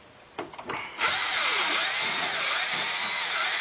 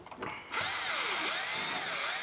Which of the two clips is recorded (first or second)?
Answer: second